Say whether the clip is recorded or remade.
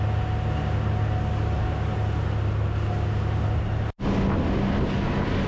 recorded